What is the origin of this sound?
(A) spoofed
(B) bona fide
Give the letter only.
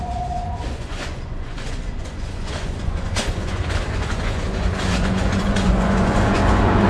A